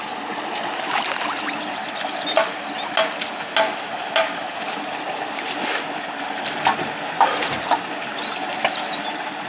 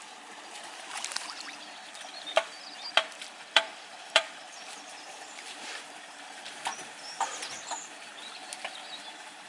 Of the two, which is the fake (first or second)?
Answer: second